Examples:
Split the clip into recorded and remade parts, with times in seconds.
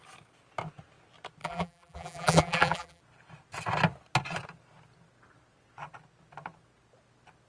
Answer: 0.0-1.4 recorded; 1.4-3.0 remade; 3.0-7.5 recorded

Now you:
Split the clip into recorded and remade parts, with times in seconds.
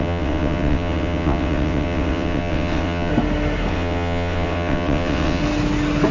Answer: 0.0-3.1 remade; 3.1-3.7 recorded; 3.7-5.4 remade; 5.4-6.1 recorded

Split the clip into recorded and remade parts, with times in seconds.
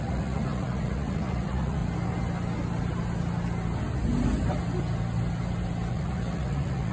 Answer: 0.0-1.8 remade; 1.8-5.9 recorded; 5.9-6.9 remade